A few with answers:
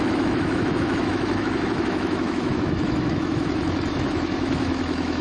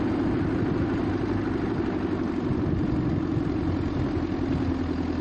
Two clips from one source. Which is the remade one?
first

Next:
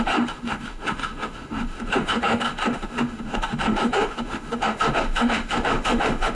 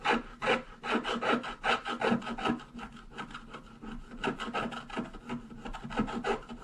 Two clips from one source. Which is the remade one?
first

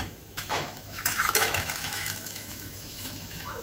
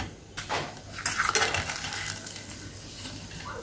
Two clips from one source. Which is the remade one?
first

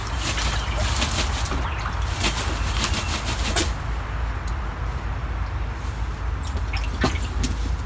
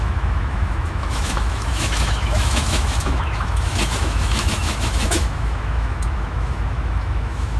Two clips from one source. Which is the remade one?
second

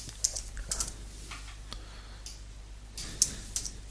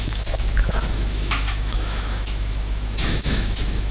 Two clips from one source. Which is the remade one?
second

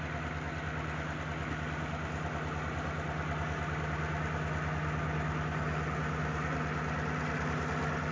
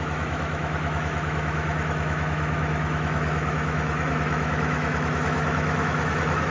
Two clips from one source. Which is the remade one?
second